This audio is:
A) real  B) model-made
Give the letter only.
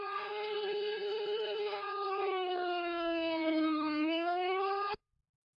B